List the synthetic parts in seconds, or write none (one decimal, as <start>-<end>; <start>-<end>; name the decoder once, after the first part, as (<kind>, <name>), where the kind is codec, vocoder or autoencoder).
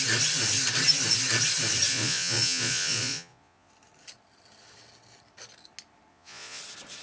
1.9-3.7 (vocoder, Vocos); 6.1-6.6